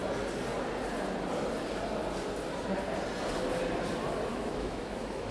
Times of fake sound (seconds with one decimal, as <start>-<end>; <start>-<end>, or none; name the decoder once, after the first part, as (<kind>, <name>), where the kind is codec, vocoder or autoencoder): 4.3-5.3 (autoencoder, DAC-VAE)